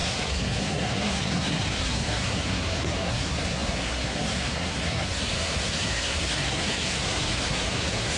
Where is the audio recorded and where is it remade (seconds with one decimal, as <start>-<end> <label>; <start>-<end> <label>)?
0.0-8.2 remade